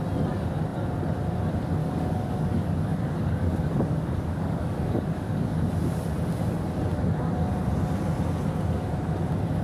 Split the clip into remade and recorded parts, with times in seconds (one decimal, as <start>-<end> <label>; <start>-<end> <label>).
0.0-1.8 recorded; 1.8-6.0 remade; 6.0-9.6 recorded